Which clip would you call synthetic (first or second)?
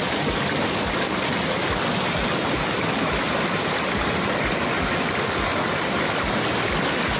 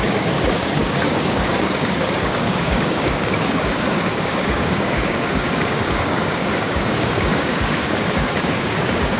second